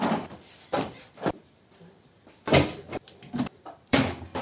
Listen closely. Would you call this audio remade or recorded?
remade